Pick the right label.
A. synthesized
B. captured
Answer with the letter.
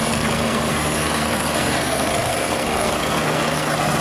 A